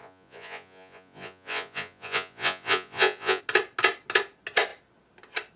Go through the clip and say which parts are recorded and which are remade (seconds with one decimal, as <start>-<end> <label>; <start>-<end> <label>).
0.0-3.4 remade; 3.4-5.6 recorded